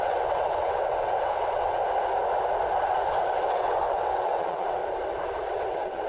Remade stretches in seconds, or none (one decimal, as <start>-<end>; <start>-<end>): 0.0-1.8; 3.1-4.8; 5.5-6.1